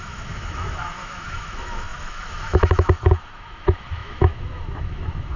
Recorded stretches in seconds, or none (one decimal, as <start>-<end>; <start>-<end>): none